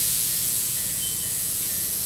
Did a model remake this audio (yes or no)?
yes